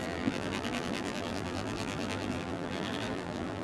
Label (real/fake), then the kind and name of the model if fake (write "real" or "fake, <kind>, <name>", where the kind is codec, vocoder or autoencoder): fake, vocoder, BigVGAN v2